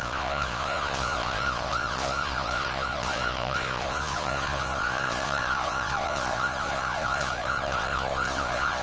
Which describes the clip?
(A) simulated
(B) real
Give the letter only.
A